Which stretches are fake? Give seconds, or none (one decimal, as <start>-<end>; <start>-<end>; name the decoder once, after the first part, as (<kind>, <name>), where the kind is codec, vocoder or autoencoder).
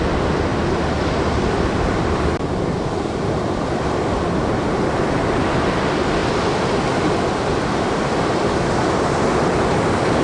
0.5-4.4 (vocoder, BigVGAN v2)